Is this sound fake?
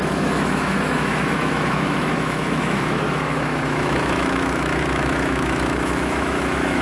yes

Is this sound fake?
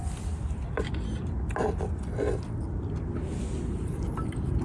no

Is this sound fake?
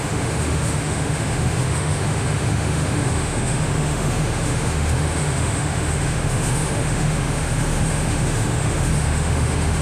yes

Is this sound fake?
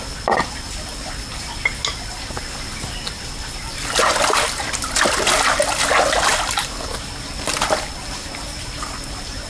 no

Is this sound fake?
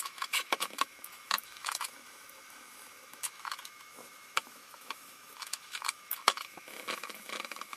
yes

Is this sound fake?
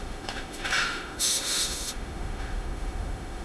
yes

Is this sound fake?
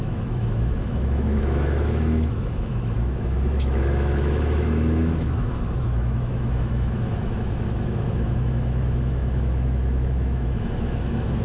yes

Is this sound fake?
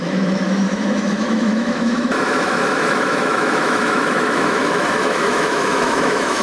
yes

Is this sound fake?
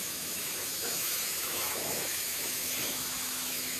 yes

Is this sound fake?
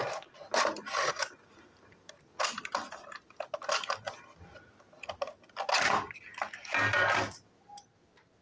no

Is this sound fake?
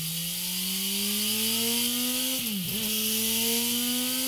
no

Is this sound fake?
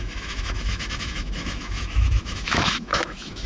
yes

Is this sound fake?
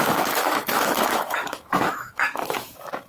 yes